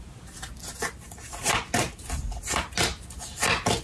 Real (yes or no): yes